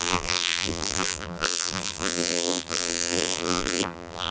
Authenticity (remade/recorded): remade